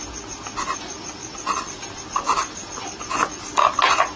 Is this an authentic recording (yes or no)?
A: yes